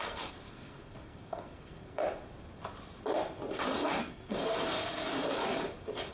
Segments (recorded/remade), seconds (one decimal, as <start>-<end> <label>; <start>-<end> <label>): 0.0-2.0 remade; 2.0-4.0 recorded; 4.0-4.4 remade; 4.4-6.1 recorded